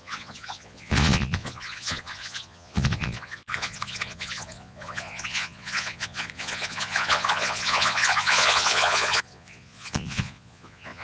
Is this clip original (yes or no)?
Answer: no